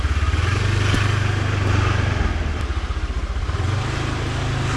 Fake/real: real